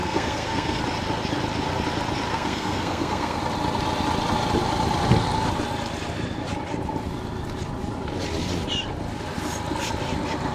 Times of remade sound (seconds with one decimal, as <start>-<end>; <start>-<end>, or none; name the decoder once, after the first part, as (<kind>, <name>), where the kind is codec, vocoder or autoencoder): 0.0-0.8 (codec, SNAC); 2.3-3.4